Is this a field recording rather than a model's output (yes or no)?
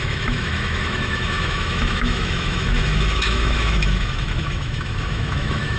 no